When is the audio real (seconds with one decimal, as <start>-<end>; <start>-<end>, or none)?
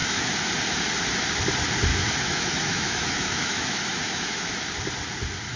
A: 0.5-1.9; 4.5-5.6